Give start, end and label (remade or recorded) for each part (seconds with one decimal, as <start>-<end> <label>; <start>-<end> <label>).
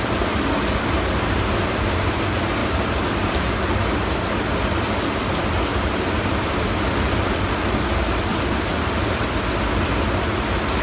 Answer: 0.0-2.6 recorded; 2.6-3.7 remade; 3.7-5.7 recorded; 5.7-6.5 remade; 6.5-8.3 recorded; 8.3-8.9 remade; 8.9-10.8 recorded